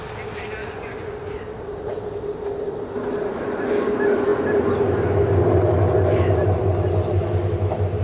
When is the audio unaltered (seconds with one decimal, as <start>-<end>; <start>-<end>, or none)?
0.0-0.6; 1.1-8.0

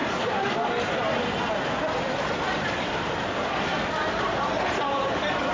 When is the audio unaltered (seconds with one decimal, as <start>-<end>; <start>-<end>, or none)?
3.7-5.0

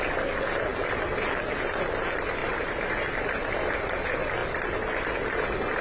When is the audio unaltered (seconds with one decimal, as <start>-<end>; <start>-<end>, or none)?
0.0-0.7; 1.4-2.4; 3.1-4.4; 5.1-5.8

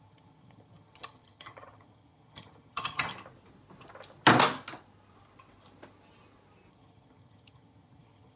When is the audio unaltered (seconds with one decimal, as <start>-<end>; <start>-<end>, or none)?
3.1-6.7

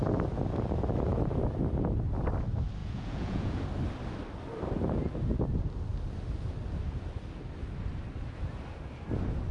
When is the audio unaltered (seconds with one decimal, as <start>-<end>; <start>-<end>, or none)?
0.0-2.8; 3.6-9.5

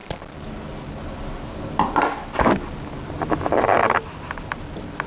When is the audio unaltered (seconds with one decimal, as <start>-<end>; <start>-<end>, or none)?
0.0-5.1

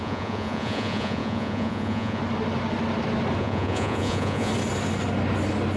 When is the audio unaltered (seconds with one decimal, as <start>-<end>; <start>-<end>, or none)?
2.2-3.4; 4.5-5.8